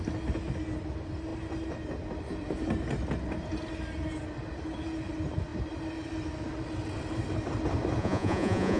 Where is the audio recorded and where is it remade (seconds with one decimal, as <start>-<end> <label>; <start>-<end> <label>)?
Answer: 0.0-8.0 recorded; 8.0-8.8 remade